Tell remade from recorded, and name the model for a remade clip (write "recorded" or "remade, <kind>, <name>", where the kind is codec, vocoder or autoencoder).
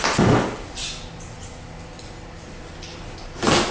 recorded